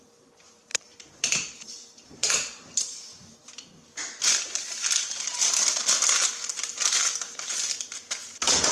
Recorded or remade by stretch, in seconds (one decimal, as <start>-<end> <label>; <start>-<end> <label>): 0.0-0.7 recorded; 0.7-2.8 remade; 2.8-8.7 recorded